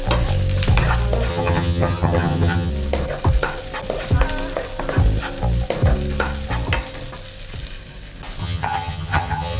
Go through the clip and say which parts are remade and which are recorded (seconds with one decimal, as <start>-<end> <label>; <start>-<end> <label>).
0.0-1.3 recorded; 1.3-2.7 remade; 2.7-8.4 recorded; 8.4-9.6 remade